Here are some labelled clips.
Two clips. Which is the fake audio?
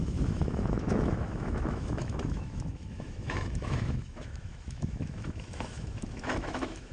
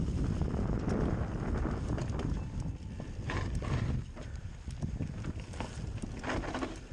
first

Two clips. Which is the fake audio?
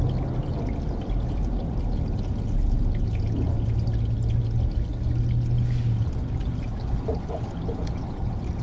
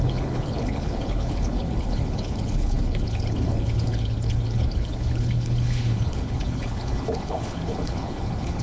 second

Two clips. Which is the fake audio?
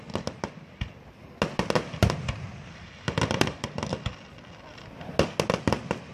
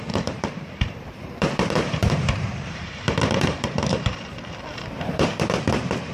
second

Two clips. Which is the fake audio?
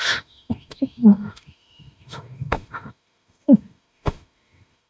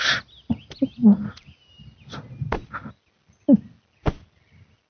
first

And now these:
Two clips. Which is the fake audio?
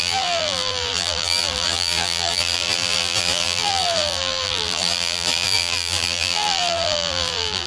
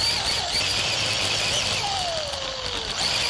first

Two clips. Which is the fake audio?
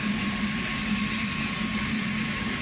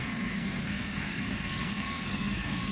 second